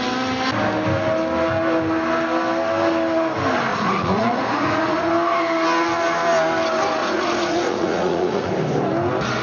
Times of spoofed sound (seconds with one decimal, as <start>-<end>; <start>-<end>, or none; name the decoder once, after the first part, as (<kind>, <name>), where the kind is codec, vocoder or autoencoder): 3.7-5.1 (vocoder, Vocos); 7.0-8.5